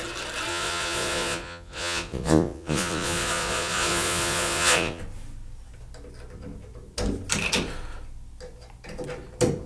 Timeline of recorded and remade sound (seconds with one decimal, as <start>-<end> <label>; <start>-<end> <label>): 0.0-0.5 recorded; 0.5-5.0 remade; 5.0-9.7 recorded